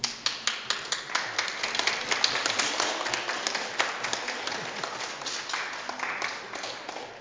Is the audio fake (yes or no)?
no